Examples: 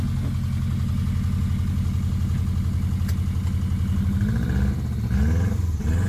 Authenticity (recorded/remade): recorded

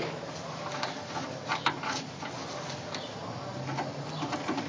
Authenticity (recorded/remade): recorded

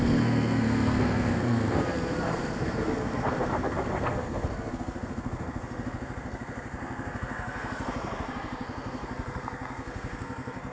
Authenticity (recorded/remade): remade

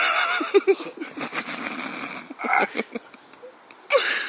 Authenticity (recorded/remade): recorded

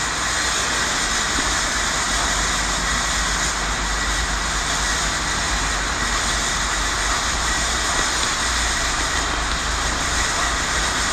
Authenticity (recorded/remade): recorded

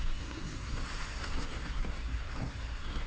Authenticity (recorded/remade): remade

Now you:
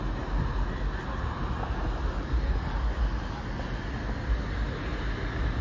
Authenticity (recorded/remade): recorded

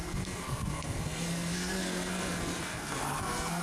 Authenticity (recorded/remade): remade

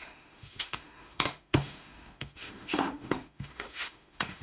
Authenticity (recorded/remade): remade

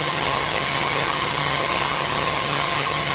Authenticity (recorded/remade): remade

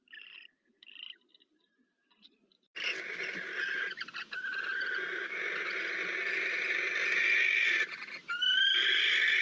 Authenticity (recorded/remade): recorded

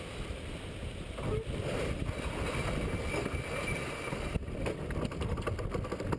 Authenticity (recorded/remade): recorded